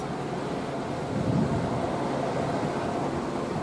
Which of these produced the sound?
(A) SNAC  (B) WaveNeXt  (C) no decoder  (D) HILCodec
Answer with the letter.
C